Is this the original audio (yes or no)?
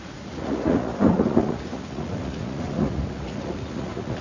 no